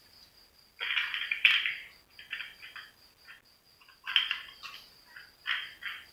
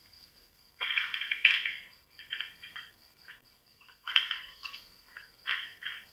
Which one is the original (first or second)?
first